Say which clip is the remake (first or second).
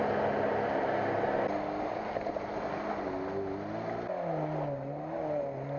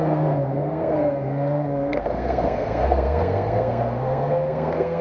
second